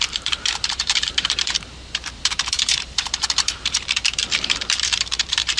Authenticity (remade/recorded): remade